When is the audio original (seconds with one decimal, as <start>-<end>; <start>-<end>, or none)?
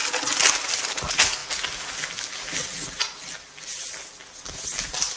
0.0-0.7; 1.4-4.3